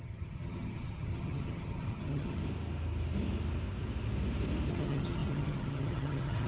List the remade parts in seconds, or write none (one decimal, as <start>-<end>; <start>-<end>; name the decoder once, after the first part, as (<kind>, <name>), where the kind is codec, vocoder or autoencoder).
0.0-2.4 (vocoder, HiFi-GAN); 4.7-6.5